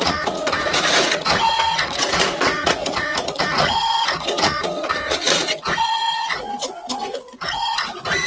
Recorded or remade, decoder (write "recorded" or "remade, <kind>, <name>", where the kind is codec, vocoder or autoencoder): remade, vocoder, Vocos